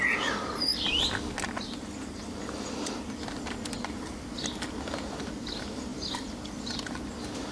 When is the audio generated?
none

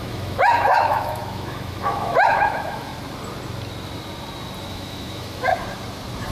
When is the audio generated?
0.0-2.9 (autoencoder, DAC-VAE); 4.6-5.5

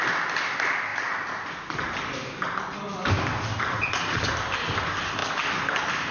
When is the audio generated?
none

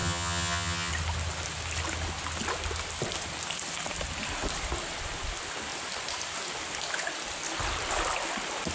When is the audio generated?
0.0-0.9 (vocoder, HiFi-GAN)

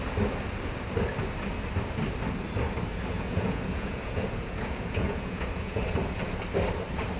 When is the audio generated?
2.9-5.8 (vocoder, Vocos)

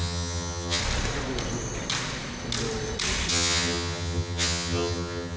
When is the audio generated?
0.0-0.8 (vocoder, HiFi-GAN); 3.3-5.4